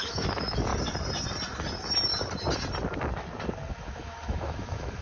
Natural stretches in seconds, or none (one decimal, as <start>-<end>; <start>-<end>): 0.7-3.7